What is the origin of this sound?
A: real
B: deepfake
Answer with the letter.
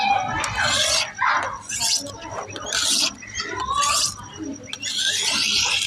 A